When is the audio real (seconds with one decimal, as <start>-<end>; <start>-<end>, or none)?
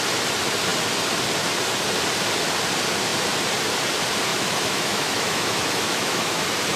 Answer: 0.0-4.3; 6.3-6.8